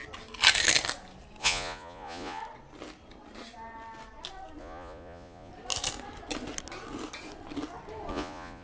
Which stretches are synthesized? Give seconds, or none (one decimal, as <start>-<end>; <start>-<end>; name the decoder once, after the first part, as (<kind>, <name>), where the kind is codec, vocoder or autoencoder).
1.4-2.4 (vocoder, Vocos); 4.6-5.5; 8.1-8.6